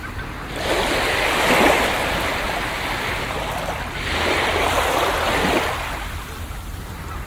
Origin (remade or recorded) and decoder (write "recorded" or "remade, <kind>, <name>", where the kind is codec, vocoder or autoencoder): recorded